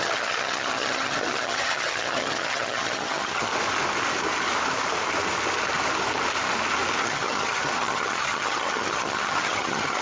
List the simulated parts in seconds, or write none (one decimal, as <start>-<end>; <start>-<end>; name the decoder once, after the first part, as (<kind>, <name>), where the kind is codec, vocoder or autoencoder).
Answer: 0.0-3.5 (vocoder, HiFi-GAN); 7.0-10.0